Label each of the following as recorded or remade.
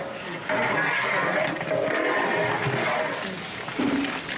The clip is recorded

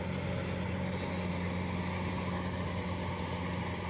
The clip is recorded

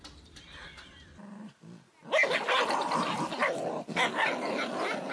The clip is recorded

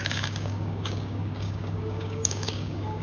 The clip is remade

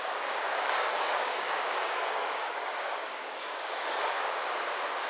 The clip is remade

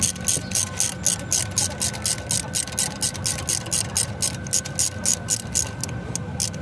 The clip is recorded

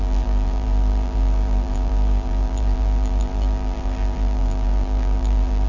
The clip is remade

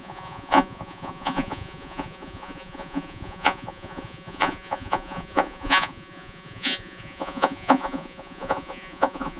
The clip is remade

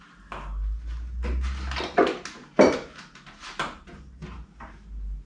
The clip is recorded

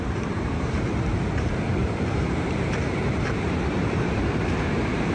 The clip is remade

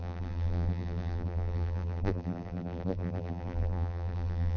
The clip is remade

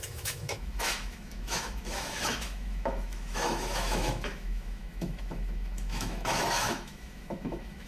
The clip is remade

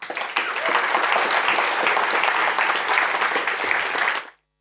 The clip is recorded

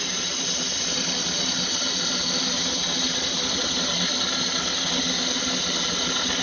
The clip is recorded